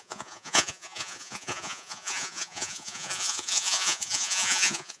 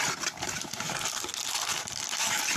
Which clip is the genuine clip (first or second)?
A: second